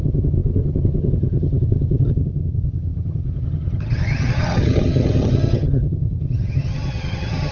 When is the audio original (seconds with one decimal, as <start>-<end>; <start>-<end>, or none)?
none